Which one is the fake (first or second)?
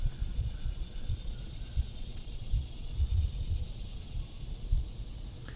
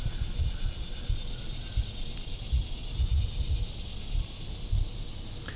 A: first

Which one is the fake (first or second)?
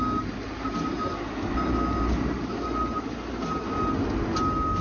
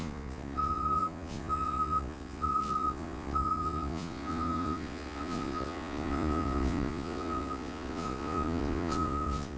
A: second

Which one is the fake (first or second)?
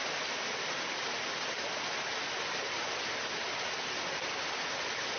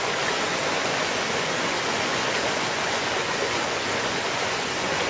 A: second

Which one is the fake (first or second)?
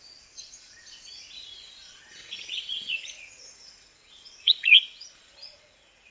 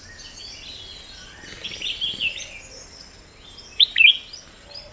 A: first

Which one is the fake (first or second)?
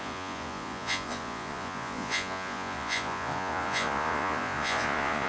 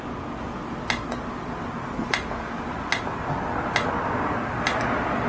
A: first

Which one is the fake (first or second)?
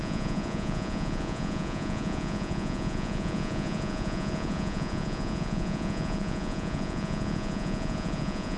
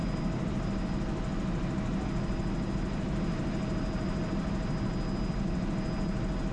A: first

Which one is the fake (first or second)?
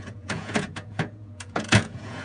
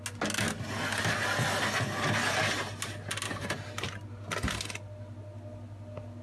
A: first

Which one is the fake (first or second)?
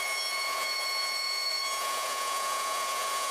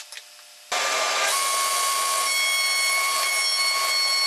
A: first